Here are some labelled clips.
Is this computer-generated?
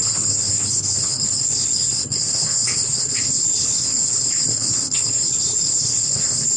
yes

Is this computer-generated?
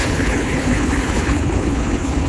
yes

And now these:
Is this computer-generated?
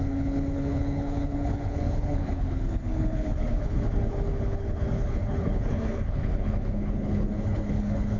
yes